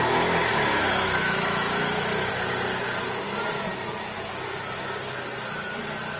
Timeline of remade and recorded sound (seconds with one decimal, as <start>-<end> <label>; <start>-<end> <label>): 0.0-0.8 recorded; 0.8-2.3 remade; 2.3-6.2 recorded